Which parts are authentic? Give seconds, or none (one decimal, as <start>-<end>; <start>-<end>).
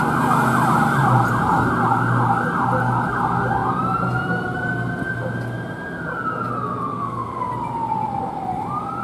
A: 0.0-6.9; 7.5-9.0